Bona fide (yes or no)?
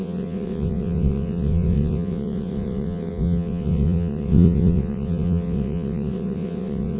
no